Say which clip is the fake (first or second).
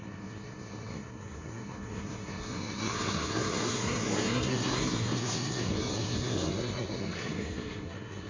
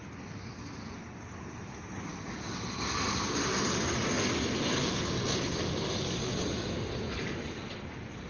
first